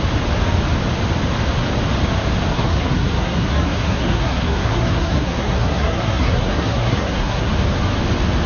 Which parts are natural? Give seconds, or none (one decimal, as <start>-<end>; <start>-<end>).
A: 0.0-2.5; 7.5-8.5